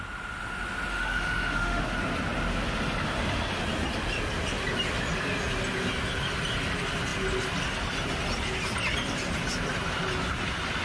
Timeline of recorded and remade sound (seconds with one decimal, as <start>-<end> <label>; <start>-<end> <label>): 0.0-0.9 recorded; 0.9-1.8 remade; 1.8-10.8 recorded